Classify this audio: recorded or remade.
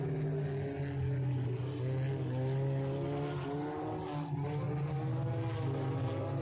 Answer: recorded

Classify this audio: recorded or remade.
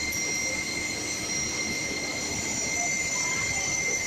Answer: recorded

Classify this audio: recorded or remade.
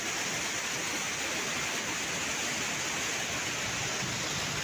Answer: recorded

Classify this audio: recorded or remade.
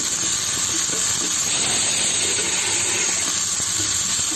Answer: recorded